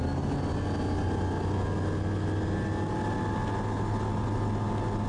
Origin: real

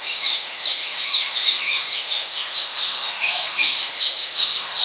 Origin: fake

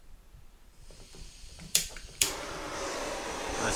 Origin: fake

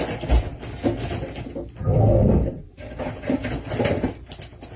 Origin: real